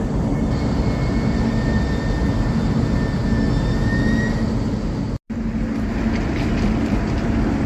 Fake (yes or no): no